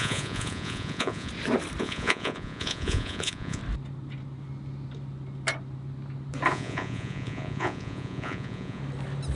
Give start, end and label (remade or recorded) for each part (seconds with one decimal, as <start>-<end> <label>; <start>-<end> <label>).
0.0-1.3 remade; 1.3-1.8 recorded; 1.8-3.6 remade; 3.6-6.5 recorded; 6.5-8.8 remade; 8.8-9.4 recorded